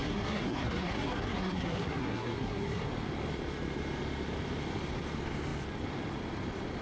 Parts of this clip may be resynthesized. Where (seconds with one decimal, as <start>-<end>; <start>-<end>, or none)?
0.0-2.9